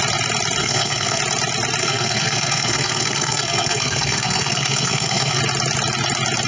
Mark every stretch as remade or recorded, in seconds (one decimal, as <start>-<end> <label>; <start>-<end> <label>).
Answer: 0.0-0.6 recorded; 0.6-1.2 remade; 1.2-1.8 recorded; 1.8-5.4 remade; 5.4-6.5 recorded

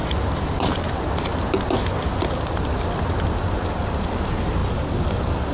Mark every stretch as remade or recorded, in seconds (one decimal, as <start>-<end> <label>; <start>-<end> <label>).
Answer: 0.0-5.5 recorded

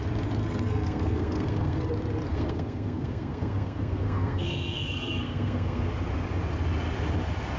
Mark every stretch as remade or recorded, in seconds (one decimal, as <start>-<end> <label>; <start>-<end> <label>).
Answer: 0.0-0.4 recorded; 0.4-1.9 remade; 1.9-2.3 recorded; 2.3-5.9 remade; 5.9-7.6 recorded

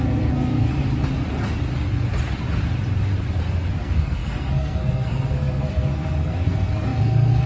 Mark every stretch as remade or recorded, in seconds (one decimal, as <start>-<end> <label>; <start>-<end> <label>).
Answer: 0.0-0.7 remade; 0.7-3.7 recorded; 3.7-7.5 remade

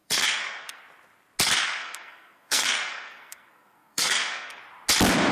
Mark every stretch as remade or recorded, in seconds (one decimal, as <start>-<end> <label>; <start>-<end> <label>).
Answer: 0.0-0.8 remade; 0.8-1.8 recorded; 1.8-4.6 remade; 4.6-5.3 recorded

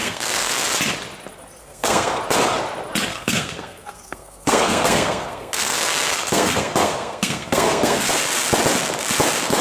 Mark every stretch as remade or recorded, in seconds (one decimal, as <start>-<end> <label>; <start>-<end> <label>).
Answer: 0.0-0.5 remade; 0.5-1.6 recorded; 1.6-2.2 remade; 2.2-3.1 recorded; 3.1-8.1 remade; 8.1-9.6 recorded

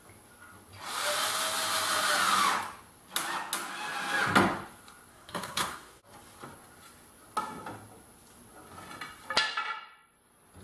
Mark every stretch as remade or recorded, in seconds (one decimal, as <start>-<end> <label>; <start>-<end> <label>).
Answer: 0.0-5.1 recorded; 5.1-6.0 remade; 6.0-10.6 recorded